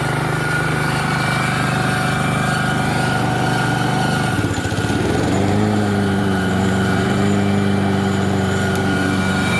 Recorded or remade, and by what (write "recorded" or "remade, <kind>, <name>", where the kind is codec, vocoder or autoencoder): remade, vocoder, BigVGAN v2